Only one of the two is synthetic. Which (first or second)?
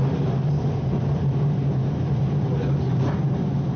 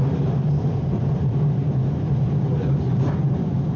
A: second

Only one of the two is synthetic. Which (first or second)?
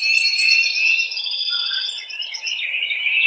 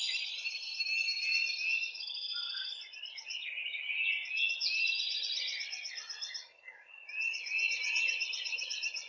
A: first